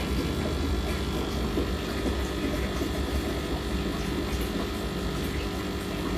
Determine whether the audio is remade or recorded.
recorded